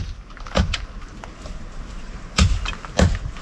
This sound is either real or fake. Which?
real